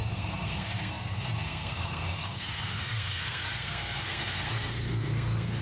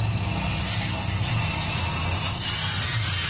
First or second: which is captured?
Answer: second